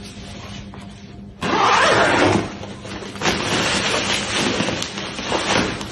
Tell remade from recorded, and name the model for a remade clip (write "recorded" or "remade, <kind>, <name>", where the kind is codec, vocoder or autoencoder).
recorded